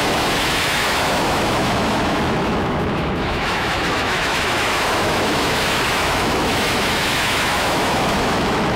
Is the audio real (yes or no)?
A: no